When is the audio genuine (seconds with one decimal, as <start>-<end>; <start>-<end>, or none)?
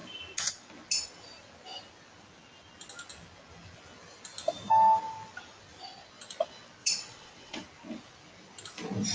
0.0-6.8; 7.6-9.1